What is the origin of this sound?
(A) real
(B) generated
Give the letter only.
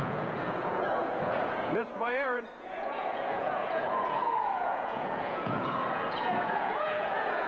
B